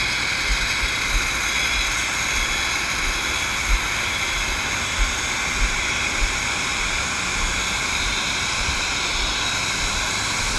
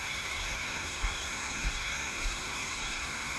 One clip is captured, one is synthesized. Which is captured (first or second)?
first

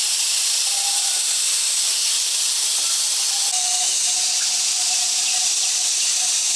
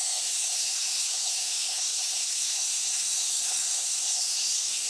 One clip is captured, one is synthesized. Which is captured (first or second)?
first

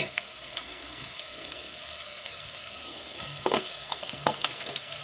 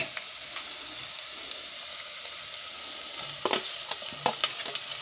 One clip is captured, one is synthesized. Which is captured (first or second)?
second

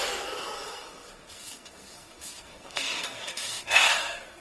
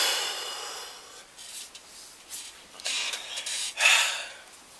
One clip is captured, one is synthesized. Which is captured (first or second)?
second